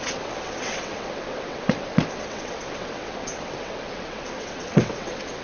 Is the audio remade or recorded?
remade